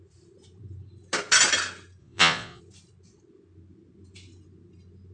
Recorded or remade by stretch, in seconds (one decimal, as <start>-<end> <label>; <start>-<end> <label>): 0.0-2.0 recorded; 2.0-2.6 remade; 2.6-5.1 recorded